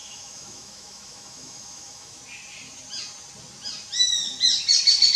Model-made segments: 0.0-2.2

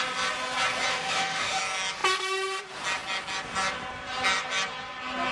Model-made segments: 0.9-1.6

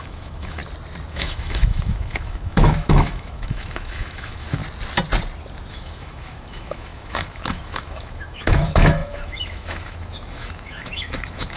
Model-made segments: 0.0-0.6; 1.1-4.6; 5.7-11.6

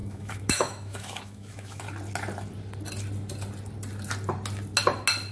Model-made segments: 0.0-1.8

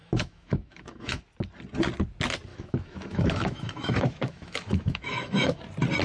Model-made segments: 0.0-1.2; 2.5-5.6

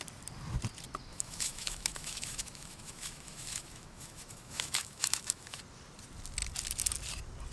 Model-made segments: 1.1-5.6

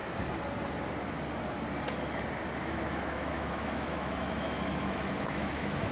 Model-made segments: 2.6-5.9